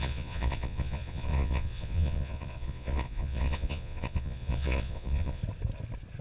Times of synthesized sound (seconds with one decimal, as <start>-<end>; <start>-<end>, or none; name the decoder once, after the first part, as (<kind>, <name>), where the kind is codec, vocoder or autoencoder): 0.0-5.4 (vocoder, Vocos)